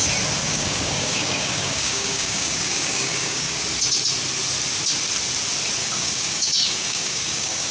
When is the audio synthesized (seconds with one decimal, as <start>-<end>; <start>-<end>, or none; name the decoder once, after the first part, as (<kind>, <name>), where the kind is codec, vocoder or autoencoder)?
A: 0.4-3.6 (codec, DAC); 5.8-7.7